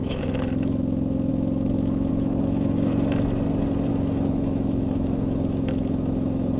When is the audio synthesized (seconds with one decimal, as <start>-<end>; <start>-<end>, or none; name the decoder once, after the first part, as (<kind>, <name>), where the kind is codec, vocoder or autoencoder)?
0.0-2.9 (autoencoder, DAC-VAE); 3.9-6.6